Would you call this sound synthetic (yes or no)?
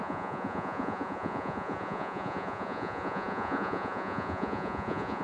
yes